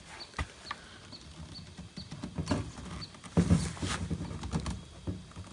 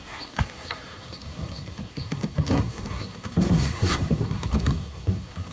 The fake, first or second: second